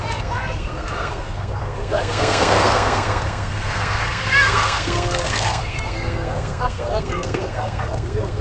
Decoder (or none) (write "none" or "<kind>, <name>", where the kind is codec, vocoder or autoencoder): codec, SNAC